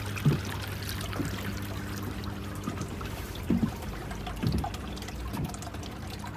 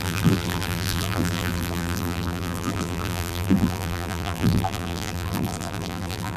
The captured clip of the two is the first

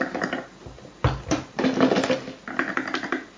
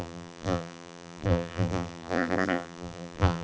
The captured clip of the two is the first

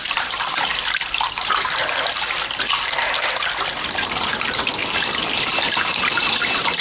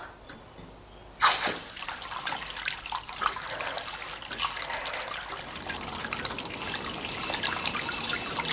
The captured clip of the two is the second